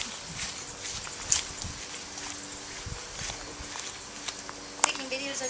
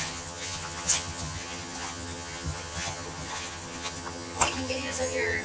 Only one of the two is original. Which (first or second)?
first